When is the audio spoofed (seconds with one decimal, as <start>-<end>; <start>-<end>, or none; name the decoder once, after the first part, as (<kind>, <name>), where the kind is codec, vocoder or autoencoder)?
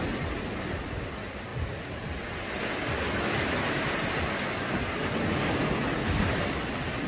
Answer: none